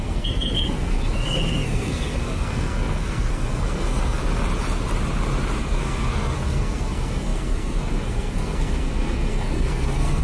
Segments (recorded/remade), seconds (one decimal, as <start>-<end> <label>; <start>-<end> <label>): 0.0-4.2 remade; 4.2-5.6 recorded; 5.6-10.2 remade